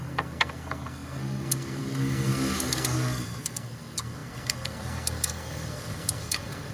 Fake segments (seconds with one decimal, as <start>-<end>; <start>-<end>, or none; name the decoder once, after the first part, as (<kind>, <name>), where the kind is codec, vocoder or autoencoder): 0.0-6.7 (codec, SNAC)